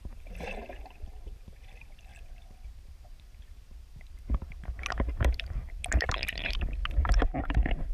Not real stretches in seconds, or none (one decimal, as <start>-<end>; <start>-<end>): 0.0-2.1; 4.9-6.8; 7.4-7.9